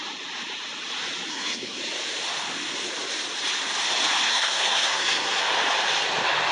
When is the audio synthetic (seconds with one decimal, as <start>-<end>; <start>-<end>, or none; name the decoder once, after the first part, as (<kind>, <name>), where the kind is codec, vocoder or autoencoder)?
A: 1.3-1.8 (codec, SNAC); 4.3-5.4